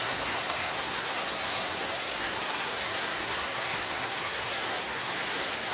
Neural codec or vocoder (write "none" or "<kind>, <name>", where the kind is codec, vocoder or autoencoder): codec, SNAC